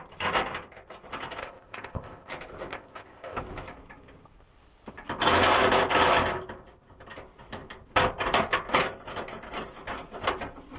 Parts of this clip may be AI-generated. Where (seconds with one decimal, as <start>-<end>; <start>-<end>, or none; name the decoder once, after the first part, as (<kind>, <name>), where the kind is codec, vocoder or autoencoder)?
1.4-2.3 (codec, ZipCodec); 2.7-3.4